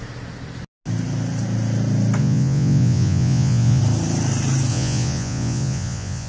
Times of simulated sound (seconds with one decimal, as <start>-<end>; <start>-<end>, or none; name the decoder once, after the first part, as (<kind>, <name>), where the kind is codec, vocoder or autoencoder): 2.2-3.8 (vocoder, Vocos); 4.7-6.3